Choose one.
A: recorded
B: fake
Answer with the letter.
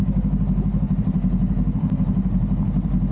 A